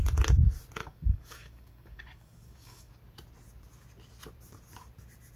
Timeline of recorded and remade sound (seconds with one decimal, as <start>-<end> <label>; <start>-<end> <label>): 0.0-0.8 recorded; 0.8-2.9 remade; 2.9-5.4 recorded